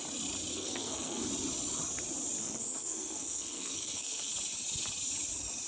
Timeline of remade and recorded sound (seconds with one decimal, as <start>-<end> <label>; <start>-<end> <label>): 0.0-0.5 recorded; 0.5-1.3 remade; 1.3-2.4 recorded; 2.4-4.3 remade; 4.3-5.7 recorded